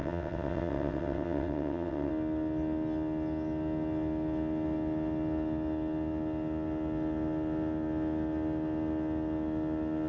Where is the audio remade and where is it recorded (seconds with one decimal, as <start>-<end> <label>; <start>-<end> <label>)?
0.0-2.1 remade; 2.1-10.1 recorded